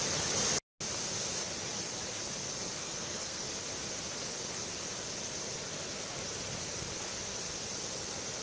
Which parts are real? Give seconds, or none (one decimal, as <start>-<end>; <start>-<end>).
0.0-2.8; 3.4-8.4